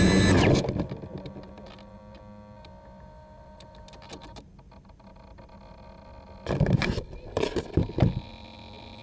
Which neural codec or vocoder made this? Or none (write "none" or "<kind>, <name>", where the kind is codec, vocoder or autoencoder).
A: none